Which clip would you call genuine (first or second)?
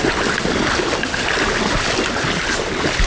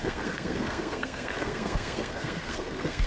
first